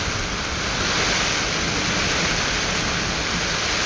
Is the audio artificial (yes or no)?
no